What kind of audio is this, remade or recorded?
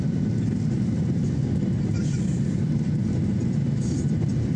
remade